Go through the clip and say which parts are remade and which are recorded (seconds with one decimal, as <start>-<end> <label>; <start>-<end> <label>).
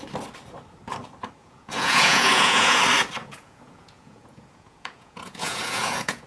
0.0-1.4 recorded; 1.4-2.8 remade; 2.8-3.2 recorded; 3.2-6.3 remade